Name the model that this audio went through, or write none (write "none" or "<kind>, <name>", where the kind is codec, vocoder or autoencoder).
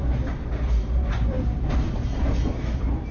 none